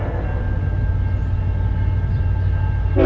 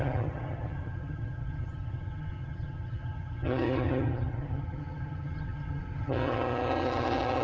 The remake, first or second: second